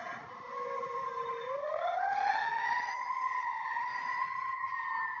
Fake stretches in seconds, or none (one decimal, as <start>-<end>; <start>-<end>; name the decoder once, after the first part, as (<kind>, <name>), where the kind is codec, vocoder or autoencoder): 1.6-4.6 (vocoder, HiFi-GAN)